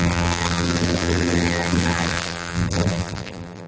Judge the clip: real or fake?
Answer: fake